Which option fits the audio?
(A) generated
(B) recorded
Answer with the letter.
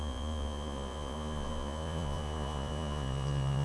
A